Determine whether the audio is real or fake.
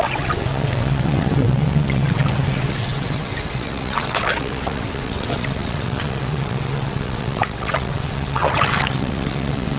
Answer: fake